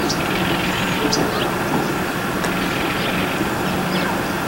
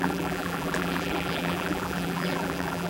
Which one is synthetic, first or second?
second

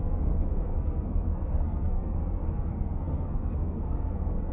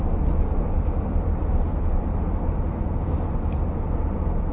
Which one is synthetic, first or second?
first